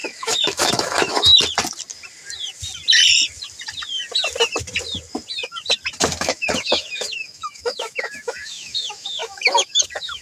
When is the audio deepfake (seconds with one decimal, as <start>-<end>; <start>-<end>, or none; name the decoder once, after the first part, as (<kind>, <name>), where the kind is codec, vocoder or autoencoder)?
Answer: 0.0-1.3 (autoencoder, DAC-VAE); 6.2-10.2